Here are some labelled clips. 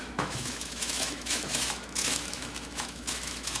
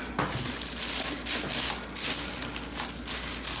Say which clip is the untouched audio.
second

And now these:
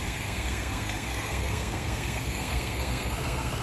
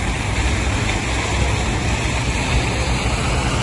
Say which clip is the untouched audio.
second